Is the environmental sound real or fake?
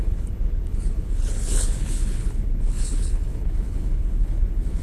fake